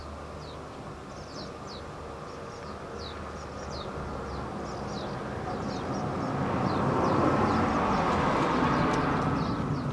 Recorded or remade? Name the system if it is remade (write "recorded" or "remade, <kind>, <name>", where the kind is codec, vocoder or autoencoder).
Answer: recorded